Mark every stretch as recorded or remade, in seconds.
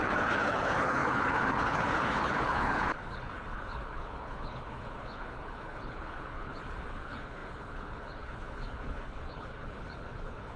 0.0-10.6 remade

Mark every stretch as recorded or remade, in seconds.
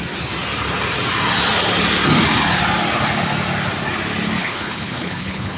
0.0-4.4 recorded; 4.4-5.6 remade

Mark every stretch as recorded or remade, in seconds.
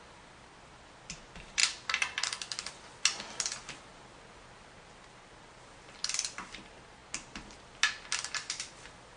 0.0-9.2 recorded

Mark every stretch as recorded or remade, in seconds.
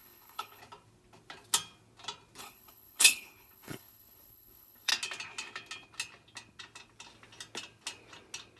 0.0-0.6 remade; 0.6-2.4 recorded; 2.4-4.9 remade; 4.9-8.6 recorded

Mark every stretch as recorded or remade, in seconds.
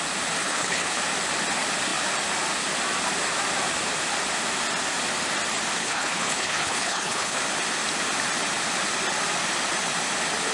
0.0-0.4 recorded; 0.4-1.0 remade; 1.0-5.8 recorded; 5.8-7.4 remade; 7.4-10.5 recorded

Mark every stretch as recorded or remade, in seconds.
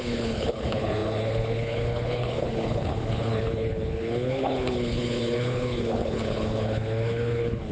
0.0-7.7 remade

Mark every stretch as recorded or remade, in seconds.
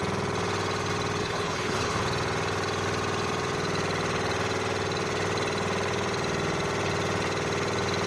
0.0-1.2 recorded; 1.2-2.0 remade; 2.0-8.1 recorded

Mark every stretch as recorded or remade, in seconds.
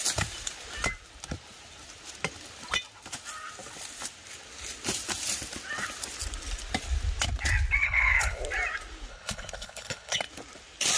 0.0-7.8 recorded; 7.8-8.4 remade; 8.4-9.1 recorded; 9.1-10.2 remade; 10.2-11.0 recorded